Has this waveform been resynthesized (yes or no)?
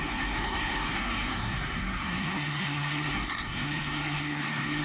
yes